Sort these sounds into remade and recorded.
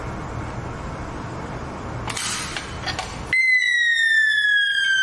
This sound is recorded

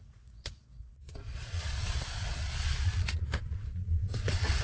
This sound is remade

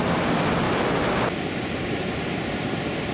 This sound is recorded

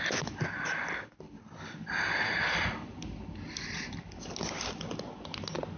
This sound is recorded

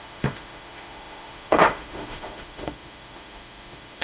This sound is remade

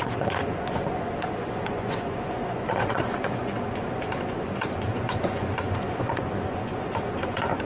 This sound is remade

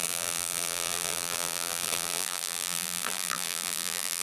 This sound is remade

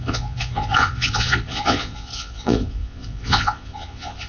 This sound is remade